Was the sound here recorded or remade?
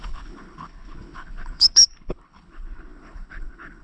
remade